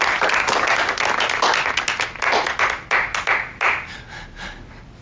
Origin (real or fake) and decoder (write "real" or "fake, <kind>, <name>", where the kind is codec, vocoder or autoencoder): real